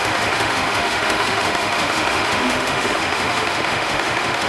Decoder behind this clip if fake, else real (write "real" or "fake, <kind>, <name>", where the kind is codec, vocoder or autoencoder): fake, autoencoder, DAC-VAE